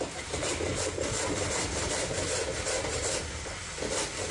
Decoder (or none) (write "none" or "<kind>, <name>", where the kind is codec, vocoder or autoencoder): none